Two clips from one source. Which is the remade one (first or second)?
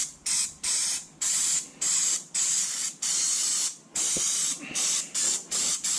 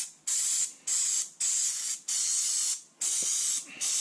first